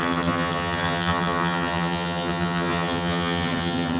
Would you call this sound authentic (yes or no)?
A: no